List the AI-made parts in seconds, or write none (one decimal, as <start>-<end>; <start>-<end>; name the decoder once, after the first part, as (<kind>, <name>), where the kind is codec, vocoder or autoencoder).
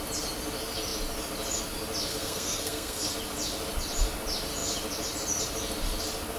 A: 2.1-3.1 (codec, SNAC)